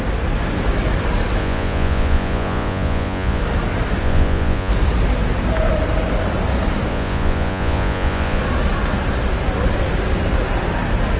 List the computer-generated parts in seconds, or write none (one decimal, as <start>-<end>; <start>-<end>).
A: 1.4-3.4; 4.0-4.7; 6.9-8.4

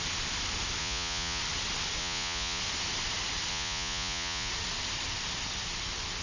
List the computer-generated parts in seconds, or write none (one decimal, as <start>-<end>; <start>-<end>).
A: 0.8-1.4; 2.0-2.6; 3.5-4.5

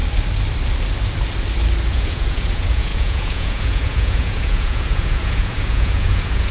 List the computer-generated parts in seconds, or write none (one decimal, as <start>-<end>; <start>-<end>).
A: 1.9-6.5